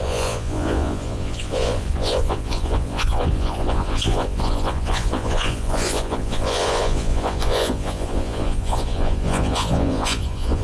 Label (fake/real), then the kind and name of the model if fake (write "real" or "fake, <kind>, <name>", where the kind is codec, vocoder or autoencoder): fake, vocoder, Vocos